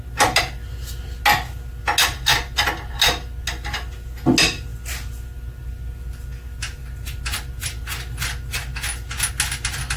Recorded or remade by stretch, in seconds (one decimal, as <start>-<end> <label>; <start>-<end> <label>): 0.0-10.0 recorded